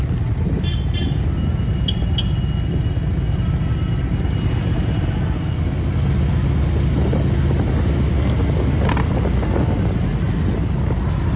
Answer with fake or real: real